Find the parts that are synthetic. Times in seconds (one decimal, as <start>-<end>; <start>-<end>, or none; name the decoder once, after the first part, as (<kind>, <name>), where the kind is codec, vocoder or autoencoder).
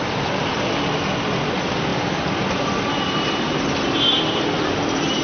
1.9-5.2 (vocoder, BigVGAN v2)